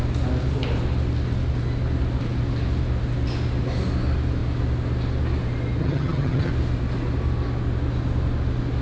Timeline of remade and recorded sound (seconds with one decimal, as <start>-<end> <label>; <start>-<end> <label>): 0.0-5.8 recorded; 5.8-6.5 remade; 6.5-8.8 recorded